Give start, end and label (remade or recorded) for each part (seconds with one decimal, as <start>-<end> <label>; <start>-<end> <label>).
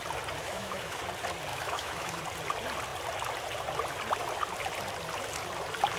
0.0-0.4 recorded; 0.4-1.0 remade; 1.0-1.5 recorded; 1.5-2.2 remade; 2.2-6.0 recorded